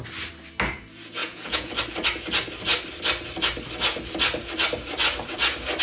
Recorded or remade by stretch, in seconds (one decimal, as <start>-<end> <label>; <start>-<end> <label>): 0.0-1.2 recorded; 1.2-1.7 remade; 1.7-5.8 recorded